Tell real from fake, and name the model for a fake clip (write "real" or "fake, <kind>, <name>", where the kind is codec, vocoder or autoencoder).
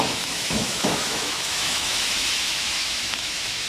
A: fake, autoencoder, DAC-VAE